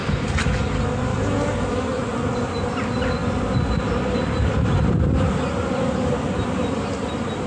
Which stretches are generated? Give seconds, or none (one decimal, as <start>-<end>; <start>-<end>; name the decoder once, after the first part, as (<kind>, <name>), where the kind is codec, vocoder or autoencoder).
0.0-1.7 (vocoder, BigVGAN v2); 2.1-2.8; 3.2-7.1